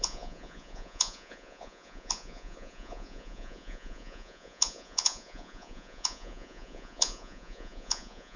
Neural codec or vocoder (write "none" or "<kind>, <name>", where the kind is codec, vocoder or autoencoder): vocoder, Vocos